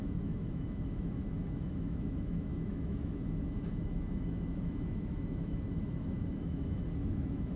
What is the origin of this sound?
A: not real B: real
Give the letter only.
A